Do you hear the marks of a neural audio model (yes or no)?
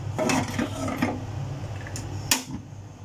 no